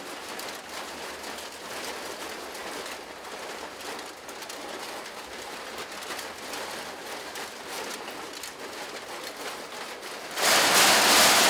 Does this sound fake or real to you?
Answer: real